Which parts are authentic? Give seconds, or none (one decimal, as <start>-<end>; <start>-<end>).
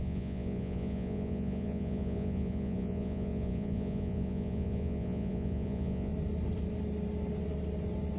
6.1-8.2